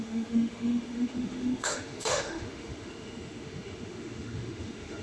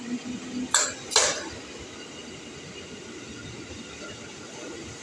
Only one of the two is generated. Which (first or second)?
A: first